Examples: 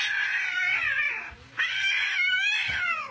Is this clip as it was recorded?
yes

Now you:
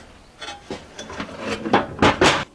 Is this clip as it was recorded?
yes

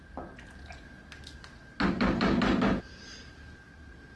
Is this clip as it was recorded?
yes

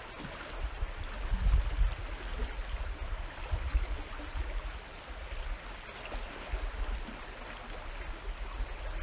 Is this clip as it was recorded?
yes